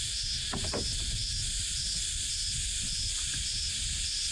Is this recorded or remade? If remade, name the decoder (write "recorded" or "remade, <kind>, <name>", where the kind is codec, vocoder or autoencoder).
recorded